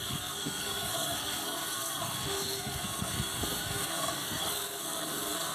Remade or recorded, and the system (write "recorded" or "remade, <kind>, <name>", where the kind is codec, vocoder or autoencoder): remade, codec, SNAC